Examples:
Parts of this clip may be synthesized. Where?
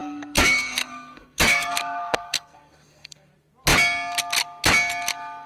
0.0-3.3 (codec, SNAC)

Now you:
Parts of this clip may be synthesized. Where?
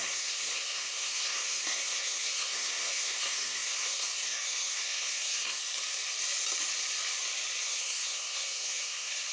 0.0-5.6 (codec, SNAC); 7.6-9.3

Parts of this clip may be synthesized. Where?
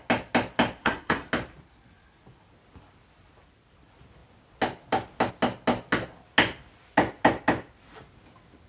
0.8-1.3 (codec, SNAC)